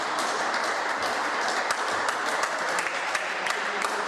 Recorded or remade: recorded